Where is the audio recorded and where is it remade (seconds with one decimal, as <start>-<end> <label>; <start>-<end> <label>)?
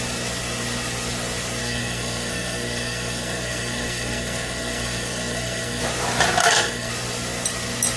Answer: 0.0-1.6 recorded; 1.6-5.8 remade; 5.8-6.4 recorded; 6.4-6.9 remade; 6.9-8.0 recorded